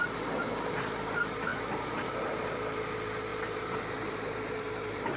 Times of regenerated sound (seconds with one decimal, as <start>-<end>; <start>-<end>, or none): 1.5-2.4; 3.3-5.2